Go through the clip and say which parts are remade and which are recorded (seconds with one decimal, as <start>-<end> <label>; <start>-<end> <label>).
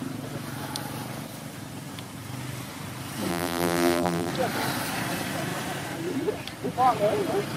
0.0-3.3 recorded; 3.3-4.3 remade; 4.3-7.6 recorded